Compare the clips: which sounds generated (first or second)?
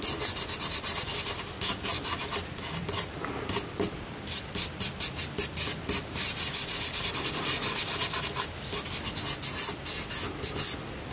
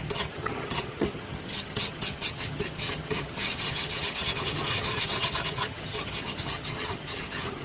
second